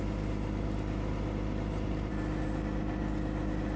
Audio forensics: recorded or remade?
recorded